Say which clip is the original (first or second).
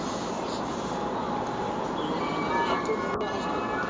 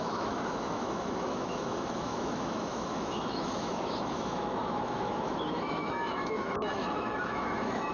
first